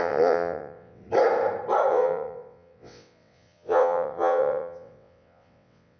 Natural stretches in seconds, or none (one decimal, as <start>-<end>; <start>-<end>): 1.0-1.9